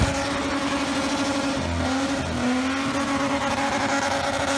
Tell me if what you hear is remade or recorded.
recorded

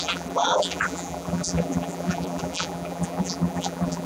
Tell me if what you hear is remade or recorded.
remade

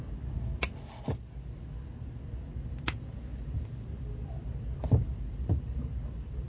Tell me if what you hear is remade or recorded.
recorded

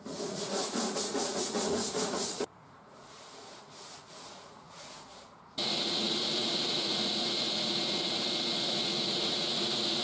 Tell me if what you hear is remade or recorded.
remade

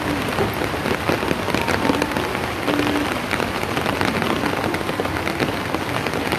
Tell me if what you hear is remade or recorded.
recorded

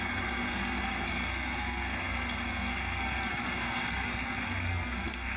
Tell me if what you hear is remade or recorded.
remade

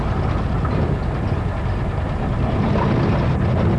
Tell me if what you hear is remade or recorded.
recorded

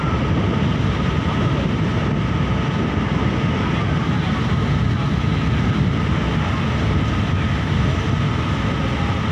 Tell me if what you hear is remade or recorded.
recorded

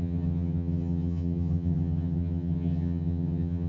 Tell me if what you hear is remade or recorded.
remade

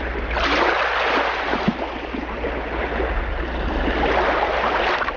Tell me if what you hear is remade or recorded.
recorded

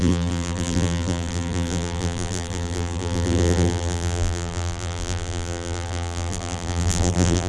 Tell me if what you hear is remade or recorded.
remade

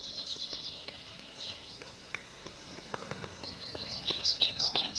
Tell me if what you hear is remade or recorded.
remade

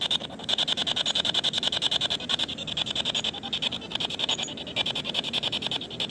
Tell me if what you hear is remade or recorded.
recorded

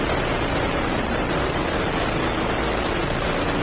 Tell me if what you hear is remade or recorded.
recorded